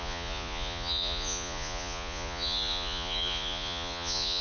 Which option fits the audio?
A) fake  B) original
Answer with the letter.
A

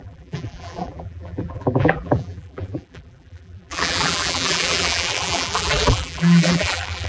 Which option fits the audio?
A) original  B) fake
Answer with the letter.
B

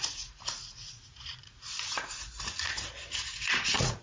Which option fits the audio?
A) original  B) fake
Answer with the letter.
B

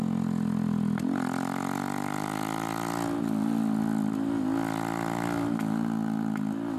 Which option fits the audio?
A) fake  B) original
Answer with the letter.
B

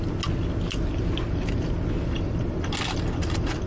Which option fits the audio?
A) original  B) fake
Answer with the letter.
A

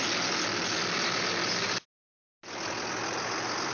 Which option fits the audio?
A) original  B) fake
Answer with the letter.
A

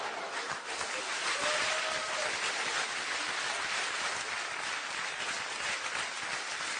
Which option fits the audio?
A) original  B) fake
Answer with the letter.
A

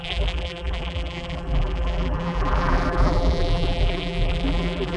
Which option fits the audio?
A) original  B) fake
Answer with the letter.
B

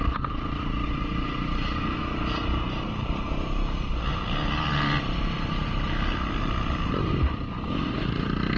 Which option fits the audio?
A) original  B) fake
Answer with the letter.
A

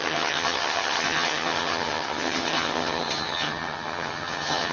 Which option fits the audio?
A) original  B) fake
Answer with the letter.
B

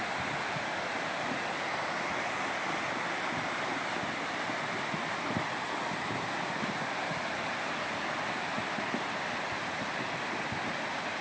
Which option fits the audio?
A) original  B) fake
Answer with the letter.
A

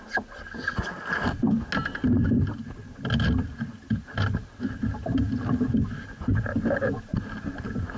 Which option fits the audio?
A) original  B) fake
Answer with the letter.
A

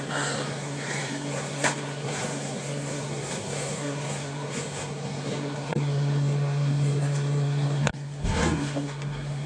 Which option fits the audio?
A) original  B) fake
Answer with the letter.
B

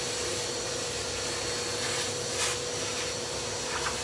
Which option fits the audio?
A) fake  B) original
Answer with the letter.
B